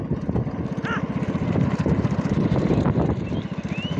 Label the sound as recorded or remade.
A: recorded